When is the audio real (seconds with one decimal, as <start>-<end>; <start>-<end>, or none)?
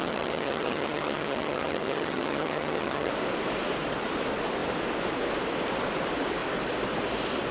3.1-7.5